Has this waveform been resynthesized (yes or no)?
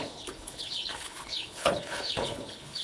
yes